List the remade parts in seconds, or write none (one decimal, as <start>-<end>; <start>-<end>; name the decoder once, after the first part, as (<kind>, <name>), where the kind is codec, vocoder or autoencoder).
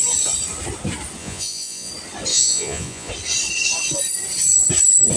1.2-1.9 (vocoder, Vocos); 2.3-3.1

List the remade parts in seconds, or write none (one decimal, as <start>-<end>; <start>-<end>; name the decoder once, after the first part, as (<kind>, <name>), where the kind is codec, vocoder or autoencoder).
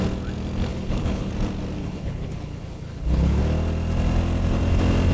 0.7-1.3 (codec, HILCodec); 1.8-3.4